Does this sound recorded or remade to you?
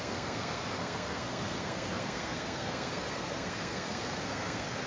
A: remade